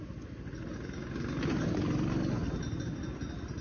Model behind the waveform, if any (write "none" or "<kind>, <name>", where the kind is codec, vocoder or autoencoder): none